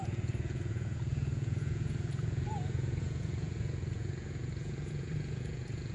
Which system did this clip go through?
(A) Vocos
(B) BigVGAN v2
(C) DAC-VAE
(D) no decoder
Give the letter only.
A